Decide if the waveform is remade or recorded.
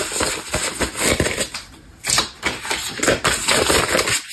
recorded